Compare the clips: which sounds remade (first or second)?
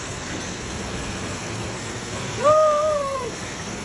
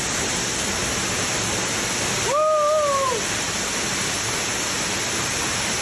first